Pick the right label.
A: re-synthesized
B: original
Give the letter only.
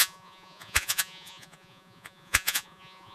A